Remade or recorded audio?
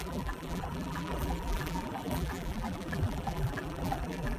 remade